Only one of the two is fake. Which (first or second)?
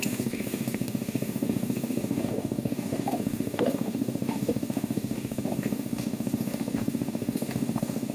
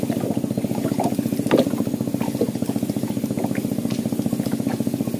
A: first